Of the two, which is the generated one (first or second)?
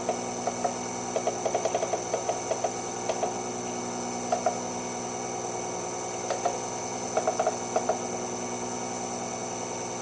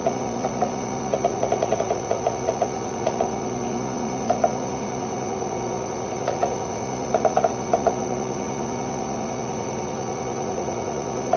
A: second